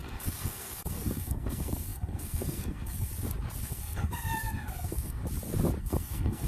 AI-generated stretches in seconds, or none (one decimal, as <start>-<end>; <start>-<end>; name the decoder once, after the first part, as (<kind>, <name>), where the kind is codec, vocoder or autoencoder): 0.0-3.1 (codec, SNAC); 3.6-5.2; 5.8-6.5

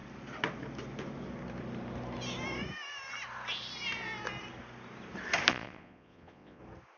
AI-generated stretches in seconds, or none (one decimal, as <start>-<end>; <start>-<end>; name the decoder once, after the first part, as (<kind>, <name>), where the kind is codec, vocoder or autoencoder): 5.5-6.6 (vocoder, Vocos)

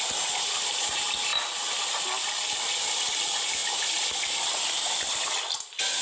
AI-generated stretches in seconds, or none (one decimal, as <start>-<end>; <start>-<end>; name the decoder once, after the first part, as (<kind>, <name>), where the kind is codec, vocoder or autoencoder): none